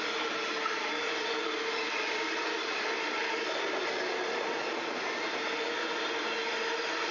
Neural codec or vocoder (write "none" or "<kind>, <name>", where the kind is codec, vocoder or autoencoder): none